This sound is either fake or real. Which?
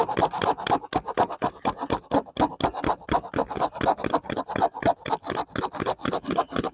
real